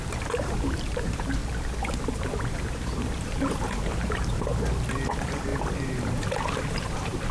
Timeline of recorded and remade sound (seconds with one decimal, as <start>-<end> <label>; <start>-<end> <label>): 0.0-1.4 remade; 1.4-2.2 recorded; 2.2-4.5 remade; 4.5-5.1 recorded; 5.1-7.3 remade